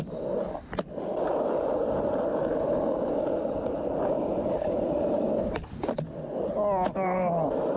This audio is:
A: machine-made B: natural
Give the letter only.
B